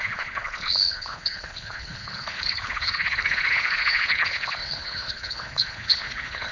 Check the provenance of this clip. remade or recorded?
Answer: remade